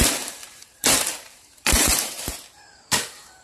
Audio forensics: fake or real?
fake